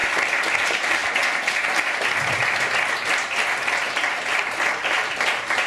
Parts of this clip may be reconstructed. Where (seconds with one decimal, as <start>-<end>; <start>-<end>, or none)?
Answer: 0.6-1.0; 3.9-5.7

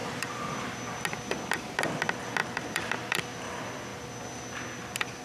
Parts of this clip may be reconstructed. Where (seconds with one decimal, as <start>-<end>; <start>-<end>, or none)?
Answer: 0.0-0.5; 2.4-3.2

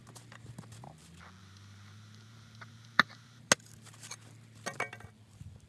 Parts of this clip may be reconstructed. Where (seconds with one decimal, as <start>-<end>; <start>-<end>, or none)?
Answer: 1.4-3.5

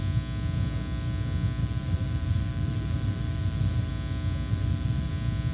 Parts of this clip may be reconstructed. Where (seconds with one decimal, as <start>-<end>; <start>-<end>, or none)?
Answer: 1.6-3.9; 4.5-5.1

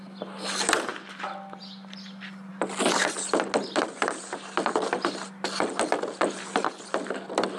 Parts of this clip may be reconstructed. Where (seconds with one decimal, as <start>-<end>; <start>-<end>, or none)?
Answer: none

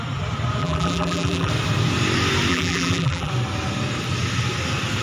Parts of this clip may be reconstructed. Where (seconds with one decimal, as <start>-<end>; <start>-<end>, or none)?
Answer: 0.6-1.5; 2.5-3.3

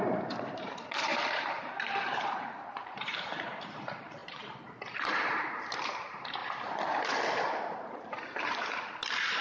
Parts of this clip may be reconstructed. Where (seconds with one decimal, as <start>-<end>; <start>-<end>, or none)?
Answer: 0.0-6.4; 7.9-9.4